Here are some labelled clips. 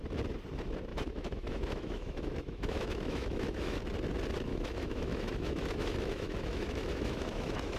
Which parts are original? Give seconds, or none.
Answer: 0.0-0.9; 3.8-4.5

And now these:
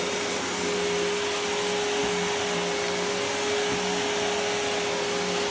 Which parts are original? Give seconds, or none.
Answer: 0.0-5.5

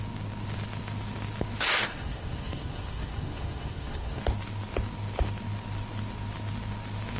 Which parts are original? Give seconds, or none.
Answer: 0.0-1.9; 4.2-7.2